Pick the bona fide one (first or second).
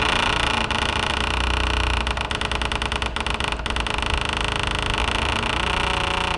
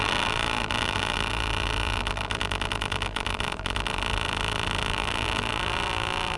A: first